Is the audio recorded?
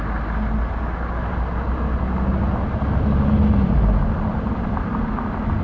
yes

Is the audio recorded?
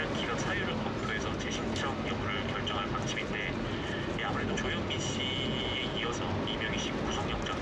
yes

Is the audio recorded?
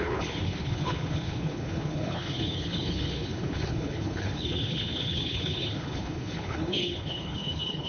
no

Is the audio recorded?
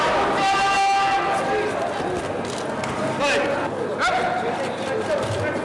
yes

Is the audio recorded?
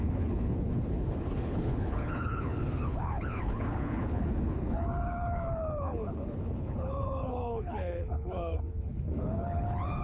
no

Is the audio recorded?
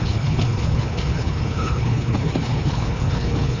no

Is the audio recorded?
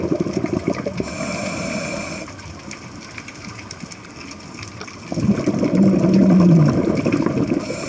yes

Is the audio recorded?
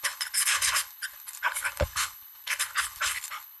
no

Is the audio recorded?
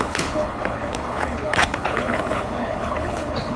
no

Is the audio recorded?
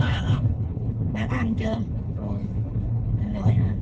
no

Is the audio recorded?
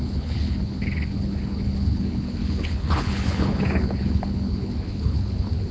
no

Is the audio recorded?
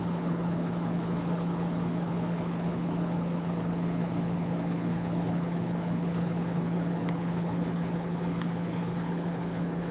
no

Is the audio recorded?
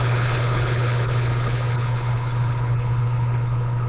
no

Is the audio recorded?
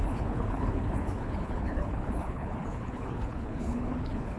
no